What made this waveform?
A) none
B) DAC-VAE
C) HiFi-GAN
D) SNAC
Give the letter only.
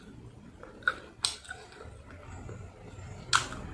A